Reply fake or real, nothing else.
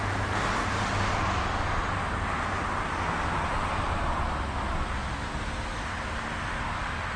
real